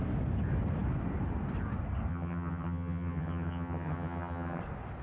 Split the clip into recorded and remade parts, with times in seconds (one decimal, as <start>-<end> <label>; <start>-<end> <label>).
0.0-2.1 recorded; 2.1-4.6 remade; 4.6-5.0 recorded